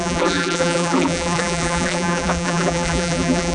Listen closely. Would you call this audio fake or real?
fake